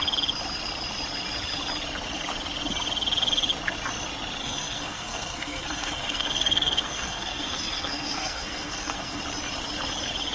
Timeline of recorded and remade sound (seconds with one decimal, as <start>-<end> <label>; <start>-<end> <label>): 0.0-4.4 recorded; 4.4-9.2 remade; 9.2-10.3 recorded